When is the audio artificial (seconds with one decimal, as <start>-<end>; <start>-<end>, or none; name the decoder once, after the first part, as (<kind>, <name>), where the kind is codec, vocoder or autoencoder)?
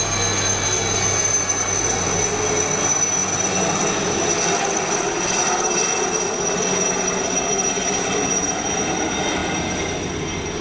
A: none